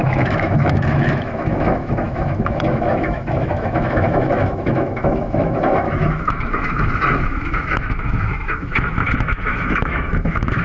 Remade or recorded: remade